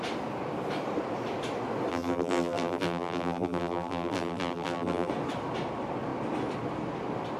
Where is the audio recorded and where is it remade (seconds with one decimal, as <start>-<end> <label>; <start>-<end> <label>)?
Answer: 0.0-1.9 recorded; 1.9-5.1 remade; 5.1-7.4 recorded